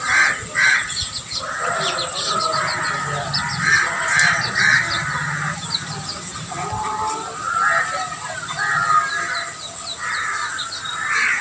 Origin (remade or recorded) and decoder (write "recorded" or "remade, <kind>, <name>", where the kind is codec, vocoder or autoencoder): recorded